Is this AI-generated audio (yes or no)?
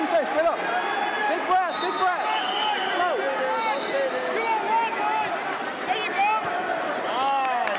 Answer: no